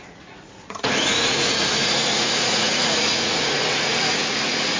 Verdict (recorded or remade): remade